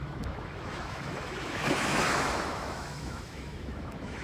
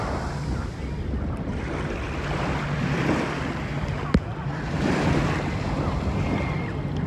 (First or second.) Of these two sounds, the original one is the second